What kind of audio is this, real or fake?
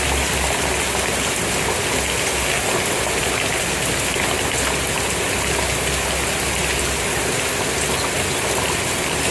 real